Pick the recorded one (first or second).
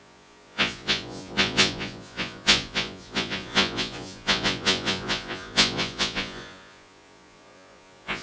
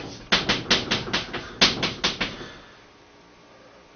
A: second